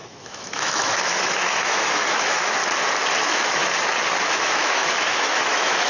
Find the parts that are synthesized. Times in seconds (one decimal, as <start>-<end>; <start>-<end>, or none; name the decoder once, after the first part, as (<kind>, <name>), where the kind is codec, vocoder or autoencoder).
0.0-2.6 (autoencoder, DAC-VAE); 3.2-3.6; 4.2-5.9